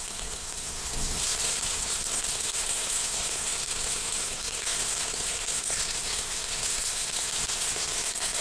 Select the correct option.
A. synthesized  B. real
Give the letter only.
A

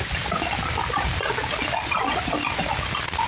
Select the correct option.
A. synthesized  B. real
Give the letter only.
B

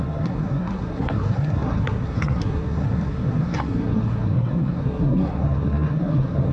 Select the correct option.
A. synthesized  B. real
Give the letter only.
A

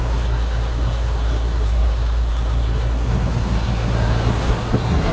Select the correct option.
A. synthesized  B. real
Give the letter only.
A